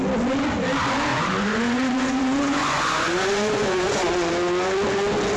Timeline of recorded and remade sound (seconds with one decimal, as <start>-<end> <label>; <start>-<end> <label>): 0.0-1.1 recorded; 1.1-4.3 remade; 4.3-5.4 recorded